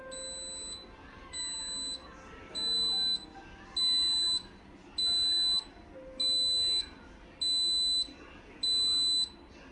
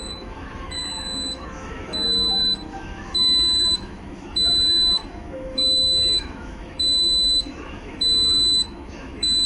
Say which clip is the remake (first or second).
second